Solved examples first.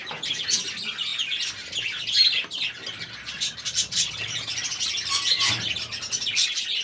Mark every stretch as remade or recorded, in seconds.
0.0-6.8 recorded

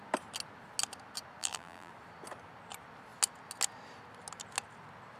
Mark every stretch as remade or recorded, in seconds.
0.0-1.4 recorded; 1.4-1.9 remade; 1.9-5.2 recorded

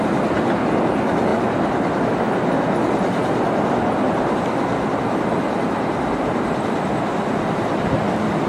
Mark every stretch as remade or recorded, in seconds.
0.0-8.5 recorded